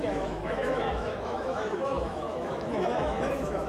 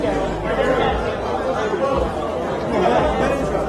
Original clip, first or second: second